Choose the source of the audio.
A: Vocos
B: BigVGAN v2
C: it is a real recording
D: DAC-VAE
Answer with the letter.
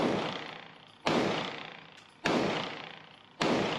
C